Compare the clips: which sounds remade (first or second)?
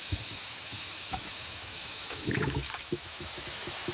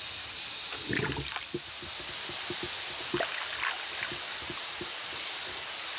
first